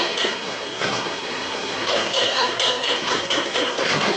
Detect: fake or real fake